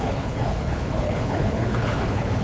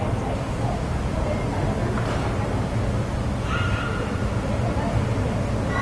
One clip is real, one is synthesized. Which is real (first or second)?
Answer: second